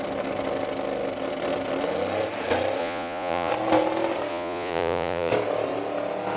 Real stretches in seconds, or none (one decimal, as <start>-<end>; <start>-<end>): 0.0-2.8; 3.5-4.3; 5.3-6.4